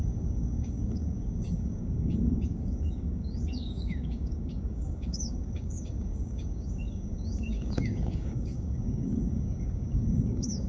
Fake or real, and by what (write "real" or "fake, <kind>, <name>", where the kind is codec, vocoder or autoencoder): fake, codec, DAC